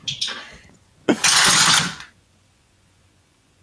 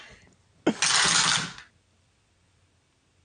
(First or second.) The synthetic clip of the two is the first